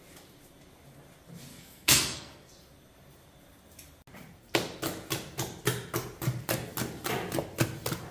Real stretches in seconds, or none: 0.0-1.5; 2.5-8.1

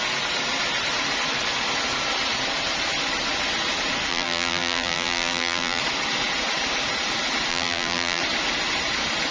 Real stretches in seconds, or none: 0.0-4.1; 5.8-7.5; 8.2-9.3

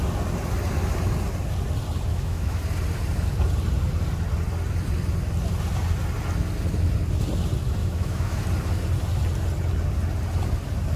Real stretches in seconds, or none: 0.0-2.1; 2.6-7.8; 8.4-11.0

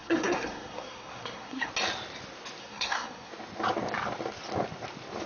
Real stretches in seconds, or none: 1.7-2.6; 3.3-5.3

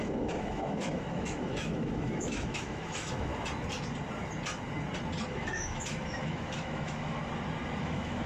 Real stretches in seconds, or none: 3.3-5.3; 7.2-7.8